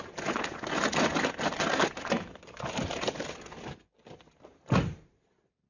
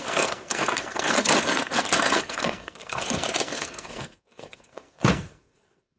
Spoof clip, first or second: second